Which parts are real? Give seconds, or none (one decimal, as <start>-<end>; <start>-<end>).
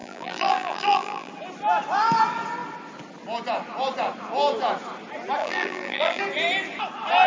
1.3-5.4; 6.2-7.3